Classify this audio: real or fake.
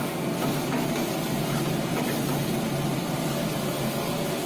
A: real